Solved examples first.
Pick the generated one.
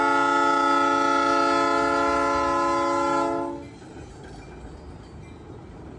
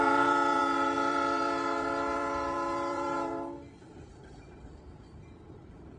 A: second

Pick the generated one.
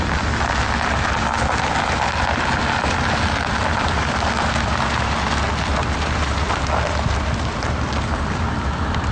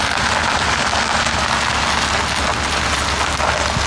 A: first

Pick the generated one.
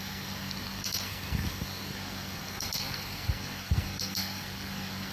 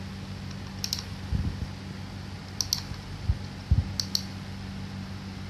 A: first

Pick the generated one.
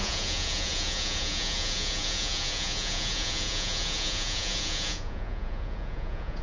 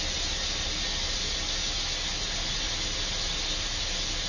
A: first